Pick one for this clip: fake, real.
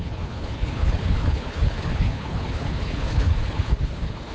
fake